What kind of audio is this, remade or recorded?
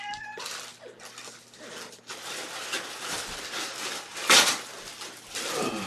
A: remade